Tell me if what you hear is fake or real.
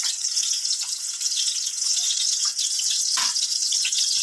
fake